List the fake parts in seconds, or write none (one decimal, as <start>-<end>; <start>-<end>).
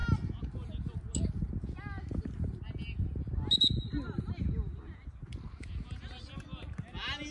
none